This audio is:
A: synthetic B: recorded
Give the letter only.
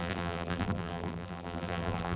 A